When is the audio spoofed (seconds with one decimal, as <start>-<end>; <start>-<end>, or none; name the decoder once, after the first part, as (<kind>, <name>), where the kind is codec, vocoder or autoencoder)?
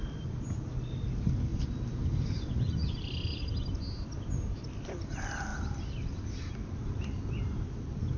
none